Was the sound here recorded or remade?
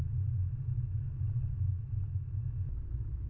recorded